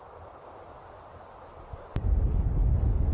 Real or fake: real